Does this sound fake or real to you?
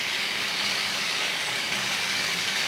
fake